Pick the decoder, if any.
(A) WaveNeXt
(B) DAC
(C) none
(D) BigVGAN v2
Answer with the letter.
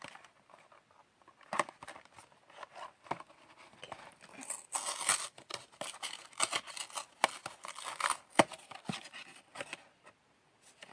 C